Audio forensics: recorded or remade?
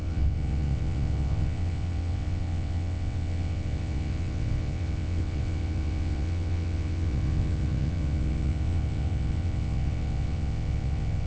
remade